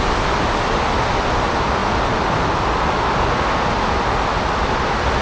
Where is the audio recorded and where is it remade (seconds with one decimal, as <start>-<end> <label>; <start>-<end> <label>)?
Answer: 0.0-5.2 recorded

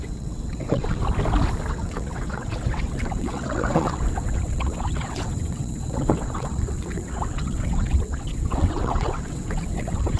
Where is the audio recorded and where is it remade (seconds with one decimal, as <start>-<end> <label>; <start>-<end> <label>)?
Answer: 0.0-1.0 remade; 1.0-1.7 recorded; 1.7-10.2 remade

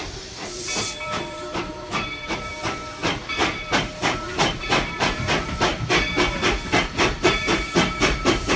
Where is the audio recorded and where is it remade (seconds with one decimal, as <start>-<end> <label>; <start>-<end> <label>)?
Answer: 0.0-5.7 remade; 5.7-6.9 recorded; 6.9-8.6 remade

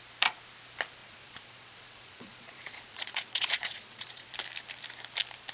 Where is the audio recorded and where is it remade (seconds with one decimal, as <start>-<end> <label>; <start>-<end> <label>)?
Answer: 0.0-1.0 recorded; 1.0-4.3 remade; 4.3-5.5 recorded

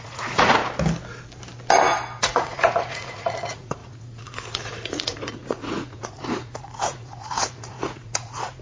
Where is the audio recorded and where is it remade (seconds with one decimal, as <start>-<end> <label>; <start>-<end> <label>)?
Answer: 0.0-0.6 remade; 0.6-2.2 recorded; 2.2-8.6 remade

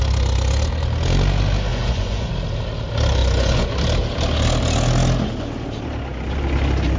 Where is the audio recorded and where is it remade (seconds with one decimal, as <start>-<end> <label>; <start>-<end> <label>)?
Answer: 0.0-1.7 recorded; 1.7-2.3 remade; 2.3-3.2 recorded; 3.2-3.7 remade; 3.7-7.0 recorded